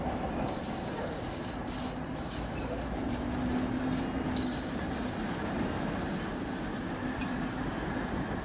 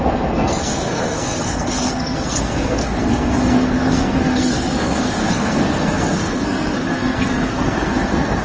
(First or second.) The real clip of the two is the first